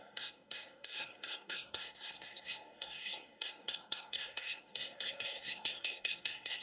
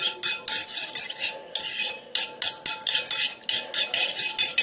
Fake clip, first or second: first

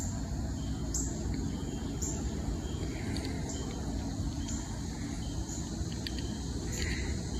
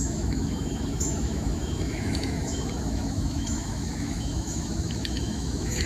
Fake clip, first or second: second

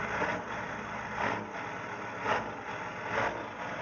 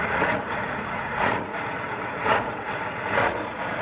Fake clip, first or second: second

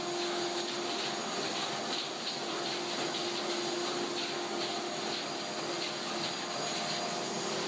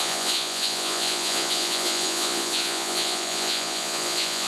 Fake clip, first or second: second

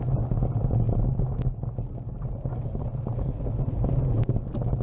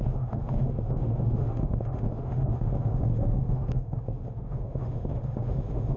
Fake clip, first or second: second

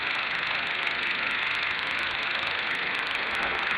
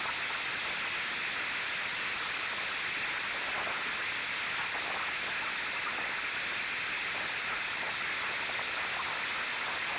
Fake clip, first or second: first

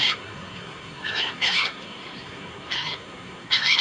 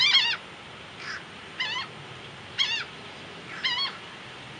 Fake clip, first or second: first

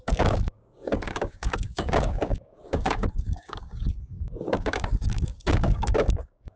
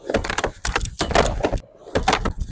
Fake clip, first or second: first